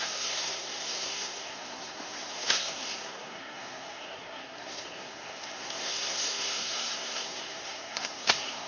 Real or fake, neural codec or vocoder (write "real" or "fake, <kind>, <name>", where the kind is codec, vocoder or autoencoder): fake, codec, SNAC